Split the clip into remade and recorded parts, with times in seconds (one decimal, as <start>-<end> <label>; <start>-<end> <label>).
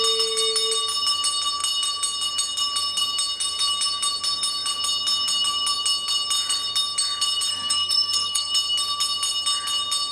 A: 0.0-7.5 recorded; 7.5-8.5 remade; 8.5-10.1 recorded